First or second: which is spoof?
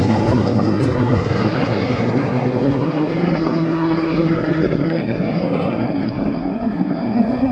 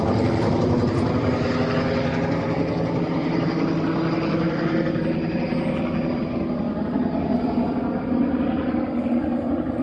first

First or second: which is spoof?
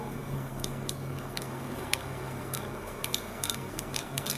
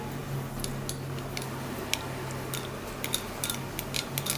first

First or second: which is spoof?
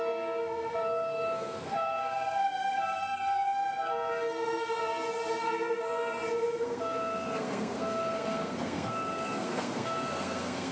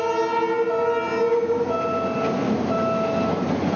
first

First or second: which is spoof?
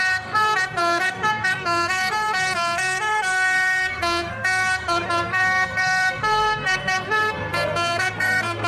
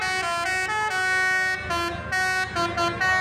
first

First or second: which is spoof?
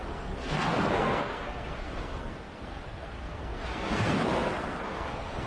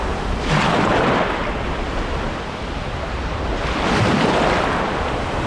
first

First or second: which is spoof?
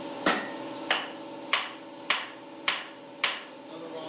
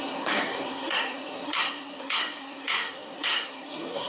second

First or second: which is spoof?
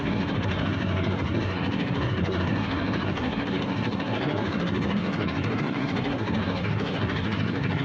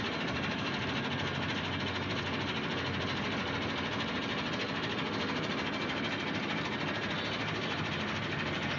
first